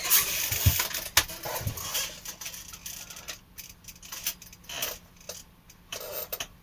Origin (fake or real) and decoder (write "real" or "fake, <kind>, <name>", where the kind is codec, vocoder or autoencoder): real